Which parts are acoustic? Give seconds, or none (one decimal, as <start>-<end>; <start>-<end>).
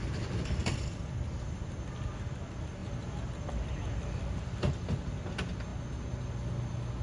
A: 0.0-0.6; 1.2-2.8; 4.7-7.0